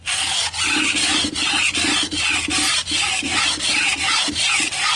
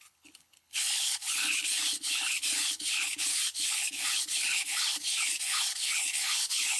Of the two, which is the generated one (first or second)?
second